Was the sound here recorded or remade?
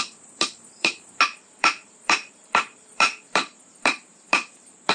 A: remade